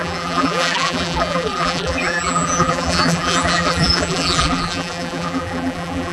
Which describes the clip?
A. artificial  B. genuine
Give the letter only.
A